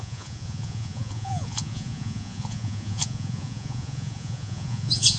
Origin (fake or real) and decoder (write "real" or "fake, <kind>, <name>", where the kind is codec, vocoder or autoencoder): fake, vocoder, Vocos